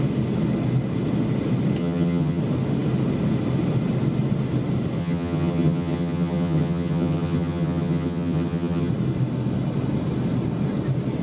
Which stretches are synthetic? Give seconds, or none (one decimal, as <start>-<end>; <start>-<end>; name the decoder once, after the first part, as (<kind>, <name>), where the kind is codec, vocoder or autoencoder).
1.8-2.4 (vocoder, HiFi-GAN); 5.0-8.9

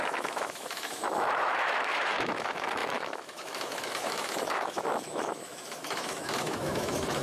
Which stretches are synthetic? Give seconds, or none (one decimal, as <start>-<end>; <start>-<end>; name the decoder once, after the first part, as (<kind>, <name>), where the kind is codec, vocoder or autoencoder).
0.0-7.2 (autoencoder, DAC-VAE)

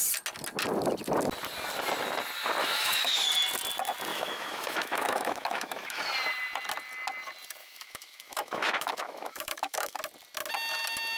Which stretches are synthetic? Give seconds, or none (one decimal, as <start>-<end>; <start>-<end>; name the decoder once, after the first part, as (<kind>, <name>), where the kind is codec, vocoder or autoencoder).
2.6-3.2 (autoencoder, DAC-VAE); 4.1-6.0; 7.6-10.0

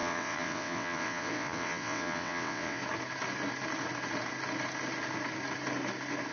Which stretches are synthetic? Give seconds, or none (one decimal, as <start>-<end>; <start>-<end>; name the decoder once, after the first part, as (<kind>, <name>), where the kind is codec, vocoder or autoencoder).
0.0-2.8 (vocoder, WaveNeXt)